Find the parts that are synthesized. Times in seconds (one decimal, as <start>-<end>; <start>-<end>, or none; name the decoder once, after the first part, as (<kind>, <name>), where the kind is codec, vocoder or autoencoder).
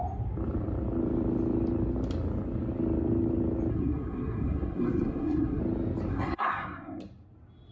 3.7-5.6 (codec, SNAC); 6.1-7.0